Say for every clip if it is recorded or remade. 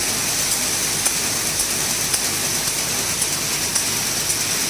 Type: recorded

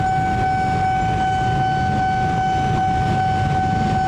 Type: recorded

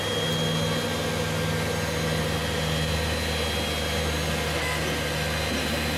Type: recorded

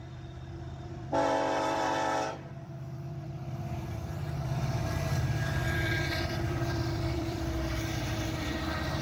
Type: remade